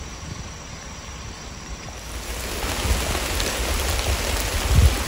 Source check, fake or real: real